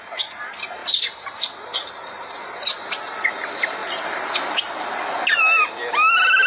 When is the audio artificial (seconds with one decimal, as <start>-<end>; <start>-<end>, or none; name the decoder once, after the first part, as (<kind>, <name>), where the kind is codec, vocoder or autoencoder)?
none